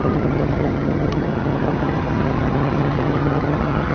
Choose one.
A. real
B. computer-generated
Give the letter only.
B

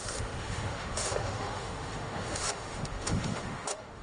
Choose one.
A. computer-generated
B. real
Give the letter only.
A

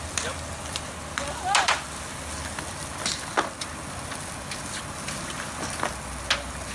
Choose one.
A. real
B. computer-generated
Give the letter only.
A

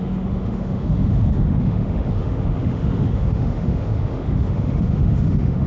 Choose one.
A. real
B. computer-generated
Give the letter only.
B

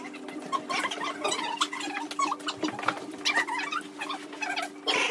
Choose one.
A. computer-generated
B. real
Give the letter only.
B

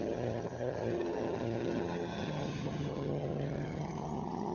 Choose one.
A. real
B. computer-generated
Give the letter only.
B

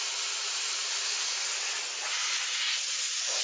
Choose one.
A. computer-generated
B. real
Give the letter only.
B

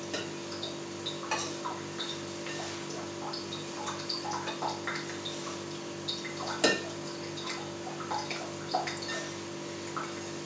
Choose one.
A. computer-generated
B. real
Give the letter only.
B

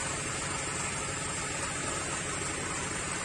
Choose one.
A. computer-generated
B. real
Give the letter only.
B